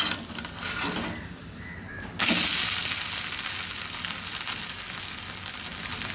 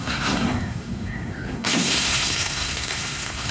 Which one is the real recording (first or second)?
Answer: first